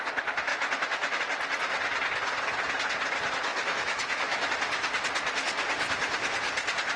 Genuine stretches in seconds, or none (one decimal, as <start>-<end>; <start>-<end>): 0.0-0.5; 1.2-3.5; 4.5-7.0